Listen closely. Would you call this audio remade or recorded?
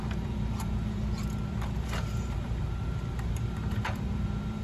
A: remade